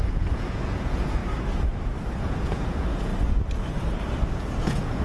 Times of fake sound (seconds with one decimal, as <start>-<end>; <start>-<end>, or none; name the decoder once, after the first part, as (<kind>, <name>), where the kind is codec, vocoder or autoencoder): 0.0-1.2 (vocoder, Vocos); 2.2-3.1; 4.6-5.0